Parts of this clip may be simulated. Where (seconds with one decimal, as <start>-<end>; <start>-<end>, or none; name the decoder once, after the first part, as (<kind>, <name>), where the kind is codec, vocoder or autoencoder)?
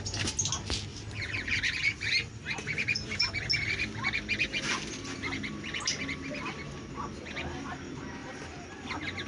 0.9-2.3 (vocoder, BigVGAN v2); 2.7-3.3; 8.2-8.7